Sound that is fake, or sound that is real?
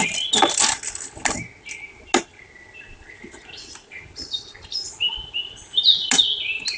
real